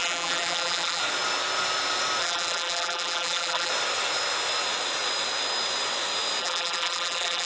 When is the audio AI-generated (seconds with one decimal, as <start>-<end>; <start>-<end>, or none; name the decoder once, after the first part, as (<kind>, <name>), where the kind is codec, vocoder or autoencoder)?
0.0-1.0 (vocoder, BigVGAN v2); 2.2-3.7; 6.4-7.5